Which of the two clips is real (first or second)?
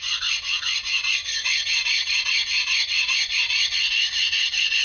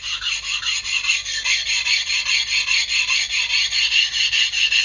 second